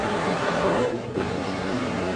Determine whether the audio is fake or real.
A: fake